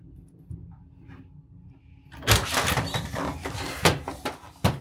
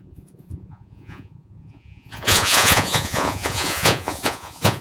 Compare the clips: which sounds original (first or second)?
first